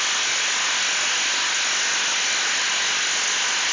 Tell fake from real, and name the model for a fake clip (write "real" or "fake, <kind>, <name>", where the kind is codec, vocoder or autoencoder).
real